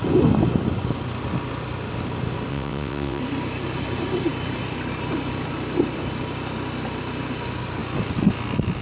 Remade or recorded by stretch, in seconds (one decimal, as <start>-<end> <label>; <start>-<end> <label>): 0.0-2.5 recorded; 2.5-3.2 remade; 3.2-8.8 recorded